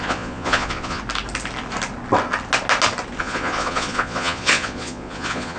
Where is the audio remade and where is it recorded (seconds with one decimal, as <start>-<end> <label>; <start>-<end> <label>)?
0.0-1.0 remade; 1.0-3.2 recorded; 3.2-5.6 remade